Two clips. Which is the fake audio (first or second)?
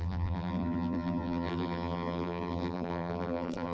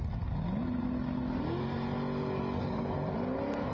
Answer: first